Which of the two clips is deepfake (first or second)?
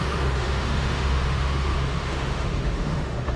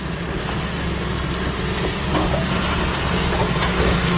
first